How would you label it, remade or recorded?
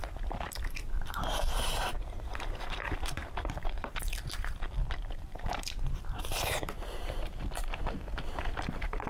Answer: remade